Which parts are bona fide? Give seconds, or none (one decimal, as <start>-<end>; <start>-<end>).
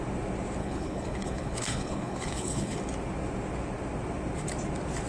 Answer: 0.0-0.6; 2.8-5.1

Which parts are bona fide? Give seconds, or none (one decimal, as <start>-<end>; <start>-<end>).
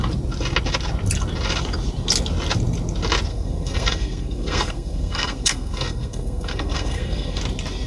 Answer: 0.0-3.3; 7.4-7.9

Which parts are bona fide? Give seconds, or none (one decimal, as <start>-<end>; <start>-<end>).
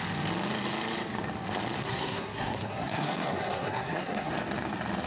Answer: 0.0-1.8; 4.3-5.1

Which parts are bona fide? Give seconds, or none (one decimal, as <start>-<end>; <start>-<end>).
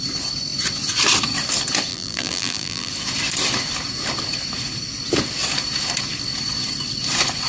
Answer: 0.0-1.9; 2.9-7.5